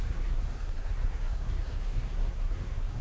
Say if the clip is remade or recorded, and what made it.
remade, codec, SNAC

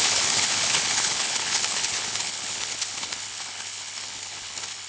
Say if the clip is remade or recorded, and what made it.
remade, codec, HILCodec